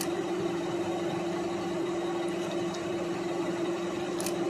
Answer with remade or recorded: remade